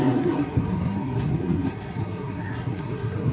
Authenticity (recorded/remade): remade